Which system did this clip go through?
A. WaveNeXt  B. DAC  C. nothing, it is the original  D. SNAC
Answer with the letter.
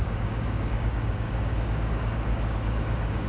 B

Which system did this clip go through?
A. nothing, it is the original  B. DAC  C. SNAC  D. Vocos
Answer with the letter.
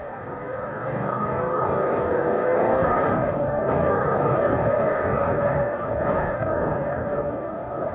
B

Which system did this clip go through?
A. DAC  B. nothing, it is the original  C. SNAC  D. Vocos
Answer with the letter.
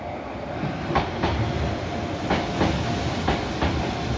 B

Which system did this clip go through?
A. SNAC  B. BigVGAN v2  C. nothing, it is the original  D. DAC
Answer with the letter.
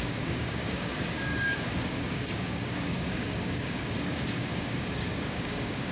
D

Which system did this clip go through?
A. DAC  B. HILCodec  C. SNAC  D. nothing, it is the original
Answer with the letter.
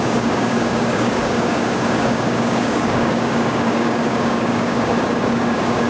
A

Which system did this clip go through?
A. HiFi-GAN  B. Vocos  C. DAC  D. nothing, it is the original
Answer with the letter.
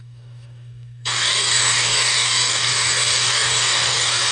C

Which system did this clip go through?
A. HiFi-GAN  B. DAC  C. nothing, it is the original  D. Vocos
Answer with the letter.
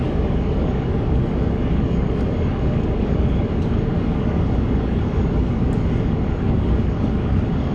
B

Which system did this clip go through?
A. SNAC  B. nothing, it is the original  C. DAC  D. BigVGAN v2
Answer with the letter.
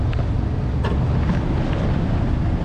B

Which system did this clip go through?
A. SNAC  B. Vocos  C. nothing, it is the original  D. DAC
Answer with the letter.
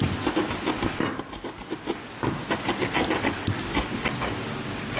C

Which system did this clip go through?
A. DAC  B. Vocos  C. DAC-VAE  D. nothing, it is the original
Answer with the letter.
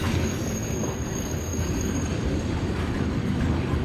A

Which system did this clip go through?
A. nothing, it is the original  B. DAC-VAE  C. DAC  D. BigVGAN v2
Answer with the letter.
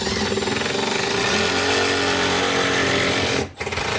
A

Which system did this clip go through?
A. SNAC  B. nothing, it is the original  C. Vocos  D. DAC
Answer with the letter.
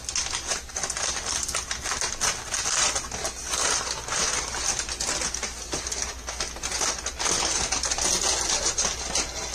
B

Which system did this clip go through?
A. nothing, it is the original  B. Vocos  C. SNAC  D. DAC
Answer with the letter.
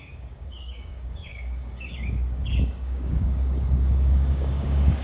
D